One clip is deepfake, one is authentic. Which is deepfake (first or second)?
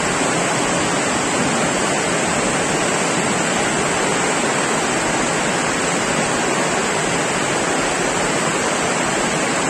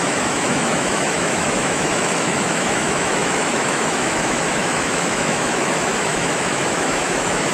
second